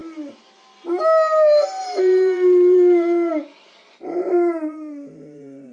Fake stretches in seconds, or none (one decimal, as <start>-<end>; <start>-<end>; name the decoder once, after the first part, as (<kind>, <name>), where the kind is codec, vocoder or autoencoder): 1.8-3.3 (vocoder, BigVGAN v2); 3.8-5.7

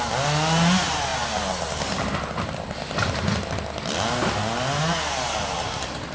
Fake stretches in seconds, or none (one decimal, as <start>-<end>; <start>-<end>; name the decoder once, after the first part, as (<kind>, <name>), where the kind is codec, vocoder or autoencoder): none